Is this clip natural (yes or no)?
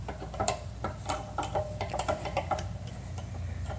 no